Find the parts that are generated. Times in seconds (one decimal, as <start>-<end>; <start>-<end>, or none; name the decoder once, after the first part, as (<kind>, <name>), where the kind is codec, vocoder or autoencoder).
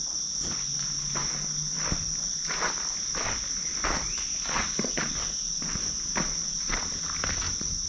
none